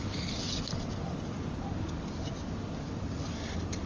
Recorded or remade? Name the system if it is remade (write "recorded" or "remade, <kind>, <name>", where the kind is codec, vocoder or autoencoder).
recorded